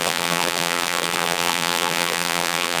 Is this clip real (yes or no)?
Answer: no